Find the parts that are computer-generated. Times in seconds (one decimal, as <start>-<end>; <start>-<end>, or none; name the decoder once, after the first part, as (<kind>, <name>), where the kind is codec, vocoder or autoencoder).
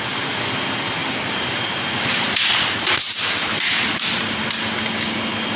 1.0-4.4 (vocoder, BigVGAN v2)